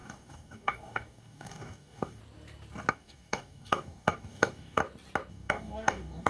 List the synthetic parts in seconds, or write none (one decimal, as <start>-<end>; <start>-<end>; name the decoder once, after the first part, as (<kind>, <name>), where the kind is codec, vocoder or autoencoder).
0.0-2.2 (codec, DAC); 2.9-4.8; 5.3-6.3